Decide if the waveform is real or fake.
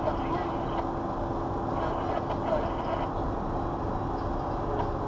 real